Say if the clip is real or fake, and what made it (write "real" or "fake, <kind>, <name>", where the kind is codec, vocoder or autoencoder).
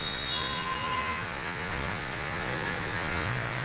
fake, vocoder, Vocos